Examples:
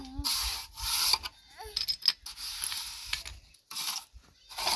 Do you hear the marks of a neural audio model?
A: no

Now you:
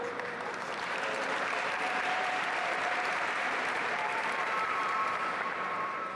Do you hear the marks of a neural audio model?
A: yes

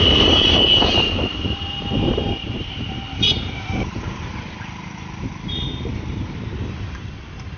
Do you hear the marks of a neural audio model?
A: yes